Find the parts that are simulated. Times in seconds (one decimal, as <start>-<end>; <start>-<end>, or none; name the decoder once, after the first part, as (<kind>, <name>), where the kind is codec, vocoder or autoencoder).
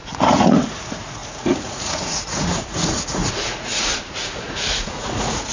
0.0-5.5 (vocoder, Vocos)